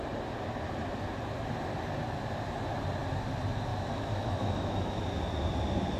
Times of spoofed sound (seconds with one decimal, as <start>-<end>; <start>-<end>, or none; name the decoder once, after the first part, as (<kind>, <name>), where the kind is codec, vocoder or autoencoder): 3.7-5.0 (autoencoder, DAC-VAE)